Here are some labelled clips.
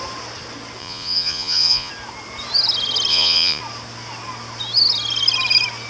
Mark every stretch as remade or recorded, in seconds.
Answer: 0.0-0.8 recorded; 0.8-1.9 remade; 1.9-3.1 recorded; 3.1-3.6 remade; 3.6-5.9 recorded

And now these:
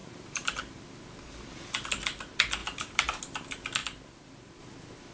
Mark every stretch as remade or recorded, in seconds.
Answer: 0.0-0.8 remade; 0.8-2.6 recorded; 2.6-3.2 remade; 3.2-5.1 recorded

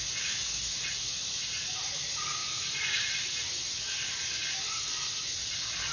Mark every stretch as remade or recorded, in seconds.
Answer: 0.0-5.9 recorded

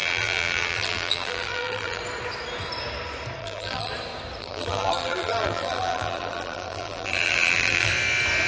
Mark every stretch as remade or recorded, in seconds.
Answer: 0.0-2.0 remade; 2.0-3.4 recorded; 3.4-3.9 remade; 3.9-4.4 recorded; 4.4-7.9 remade; 7.9-8.5 recorded

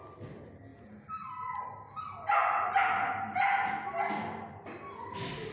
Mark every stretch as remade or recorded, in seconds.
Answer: 0.0-5.5 recorded